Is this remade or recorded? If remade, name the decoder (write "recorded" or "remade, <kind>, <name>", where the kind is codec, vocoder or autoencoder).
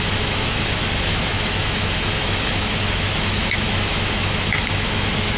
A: remade, autoencoder, DAC-VAE